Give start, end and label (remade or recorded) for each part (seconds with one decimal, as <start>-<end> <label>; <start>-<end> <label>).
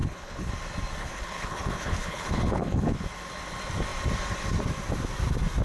0.0-0.5 remade; 0.5-1.0 recorded; 1.0-3.0 remade; 3.0-5.6 recorded